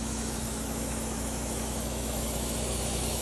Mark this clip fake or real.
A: fake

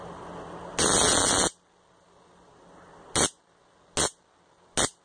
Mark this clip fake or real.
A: real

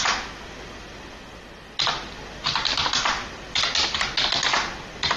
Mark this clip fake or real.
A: real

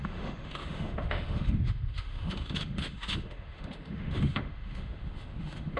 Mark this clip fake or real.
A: fake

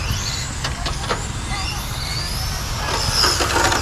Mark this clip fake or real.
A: real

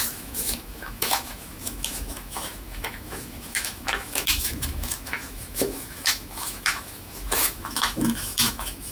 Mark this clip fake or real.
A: fake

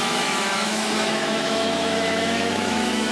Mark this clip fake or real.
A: fake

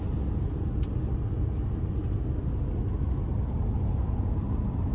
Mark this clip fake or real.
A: real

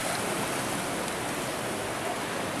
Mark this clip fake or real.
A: real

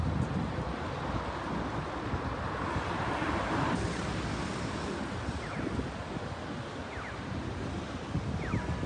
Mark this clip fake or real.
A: real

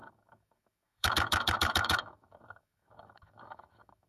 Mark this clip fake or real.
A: fake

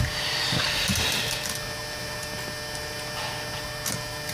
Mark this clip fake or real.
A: real